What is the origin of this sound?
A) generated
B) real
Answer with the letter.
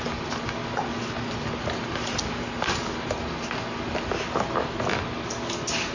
B